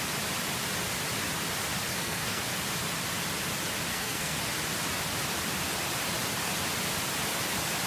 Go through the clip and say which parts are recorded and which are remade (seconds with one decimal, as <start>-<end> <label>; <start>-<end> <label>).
0.0-1.9 recorded; 1.9-2.4 remade; 2.4-3.9 recorded; 3.9-4.4 remade; 4.4-7.9 recorded

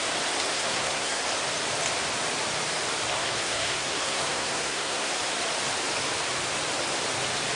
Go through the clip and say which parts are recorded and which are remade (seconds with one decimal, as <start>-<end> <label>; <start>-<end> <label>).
0.0-0.5 recorded; 0.5-1.2 remade; 1.2-3.1 recorded; 3.1-5.1 remade; 5.1-7.6 recorded